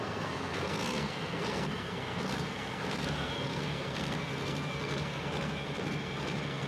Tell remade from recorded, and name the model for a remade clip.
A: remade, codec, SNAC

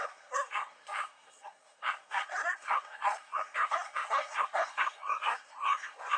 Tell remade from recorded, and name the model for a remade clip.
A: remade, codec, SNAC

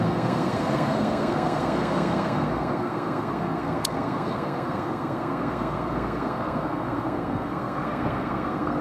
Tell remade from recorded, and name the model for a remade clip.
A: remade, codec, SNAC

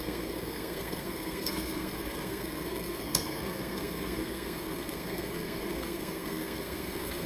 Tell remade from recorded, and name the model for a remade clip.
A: remade, codec, SNAC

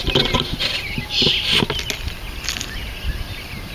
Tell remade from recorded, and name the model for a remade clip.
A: recorded